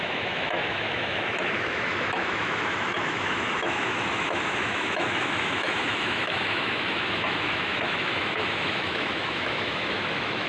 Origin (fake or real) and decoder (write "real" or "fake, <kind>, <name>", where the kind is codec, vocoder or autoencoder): fake, autoencoder, DAC-VAE